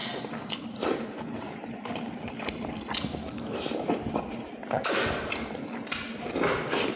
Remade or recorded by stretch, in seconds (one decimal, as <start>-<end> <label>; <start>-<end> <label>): 0.0-7.0 recorded